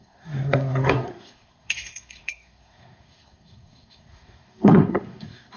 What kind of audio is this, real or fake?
fake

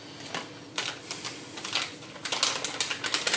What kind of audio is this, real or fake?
real